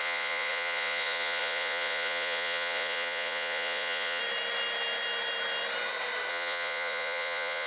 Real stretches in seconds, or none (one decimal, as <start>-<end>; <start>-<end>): 4.2-6.3